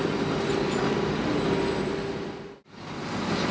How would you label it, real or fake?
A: real